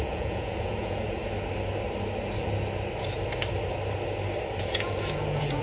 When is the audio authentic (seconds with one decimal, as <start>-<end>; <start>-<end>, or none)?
1.2-4.6